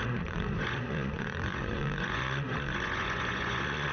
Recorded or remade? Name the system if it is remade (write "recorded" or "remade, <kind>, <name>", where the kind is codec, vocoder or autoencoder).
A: remade, vocoder, Vocos